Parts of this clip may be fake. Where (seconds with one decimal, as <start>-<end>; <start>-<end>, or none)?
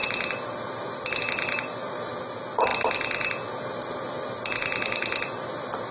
0.0-2.7; 3.5-5.9